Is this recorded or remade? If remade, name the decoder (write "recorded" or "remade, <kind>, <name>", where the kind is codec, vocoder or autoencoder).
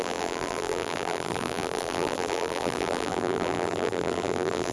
remade, vocoder, BigVGAN v2